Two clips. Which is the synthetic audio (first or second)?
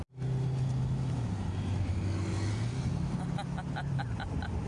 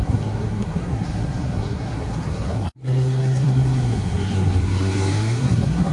second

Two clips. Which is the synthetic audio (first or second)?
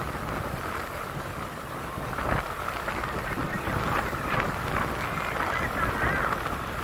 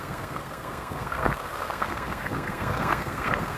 second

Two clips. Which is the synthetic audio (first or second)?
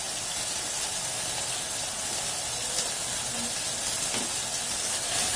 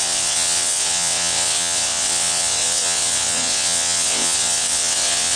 second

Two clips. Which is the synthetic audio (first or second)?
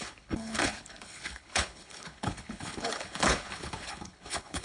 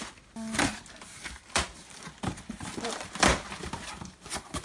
first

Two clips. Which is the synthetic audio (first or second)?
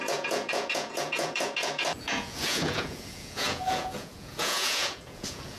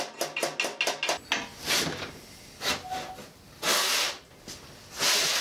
first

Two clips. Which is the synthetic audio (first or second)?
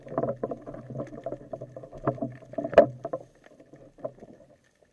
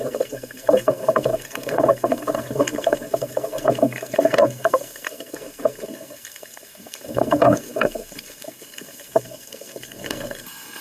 second